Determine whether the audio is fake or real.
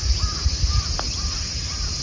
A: real